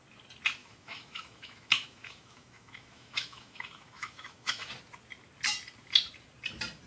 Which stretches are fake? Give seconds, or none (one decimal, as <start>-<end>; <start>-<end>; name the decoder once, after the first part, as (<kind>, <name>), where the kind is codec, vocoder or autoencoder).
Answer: 0.6-4.7 (autoencoder, DAC-VAE)